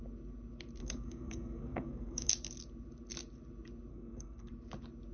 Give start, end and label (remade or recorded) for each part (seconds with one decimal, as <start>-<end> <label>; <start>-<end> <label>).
0.0-0.8 recorded; 0.8-2.3 remade; 2.3-3.9 recorded; 3.9-4.5 remade; 4.5-5.1 recorded